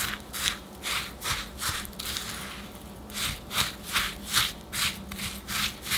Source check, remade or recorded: recorded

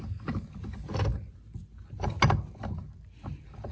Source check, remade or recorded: recorded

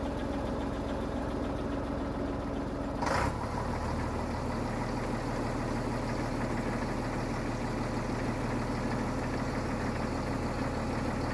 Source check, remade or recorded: recorded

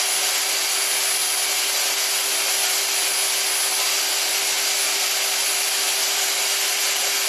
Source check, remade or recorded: recorded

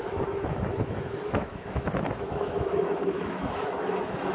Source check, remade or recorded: remade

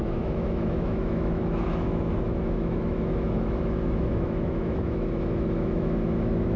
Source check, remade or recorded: remade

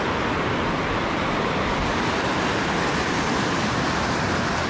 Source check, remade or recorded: recorded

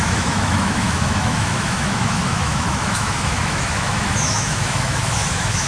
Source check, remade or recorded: remade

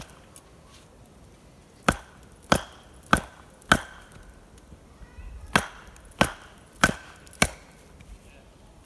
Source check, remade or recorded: recorded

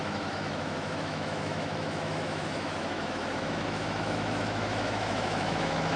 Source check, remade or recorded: remade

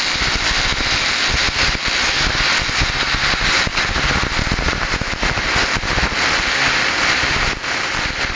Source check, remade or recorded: recorded